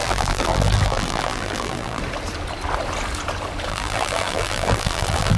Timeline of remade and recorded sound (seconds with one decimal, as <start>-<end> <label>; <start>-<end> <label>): 0.0-2.0 remade; 2.0-3.7 recorded; 3.7-5.4 remade